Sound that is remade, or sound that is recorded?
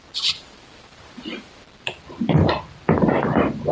recorded